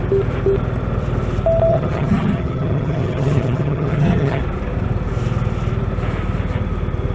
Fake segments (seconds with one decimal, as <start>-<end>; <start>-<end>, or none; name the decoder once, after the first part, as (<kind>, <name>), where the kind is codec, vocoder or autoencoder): 1.7-4.4 (vocoder, HiFi-GAN)